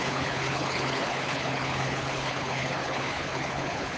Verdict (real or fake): fake